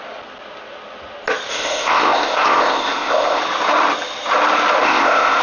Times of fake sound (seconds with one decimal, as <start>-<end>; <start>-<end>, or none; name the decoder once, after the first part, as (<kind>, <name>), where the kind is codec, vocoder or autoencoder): 1.5-3.4 (codec, ZipCodec); 4.8-5.4